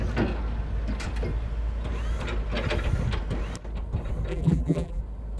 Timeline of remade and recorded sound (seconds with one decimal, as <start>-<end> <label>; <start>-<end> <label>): 0.0-4.3 recorded; 4.3-5.0 remade; 5.0-5.4 recorded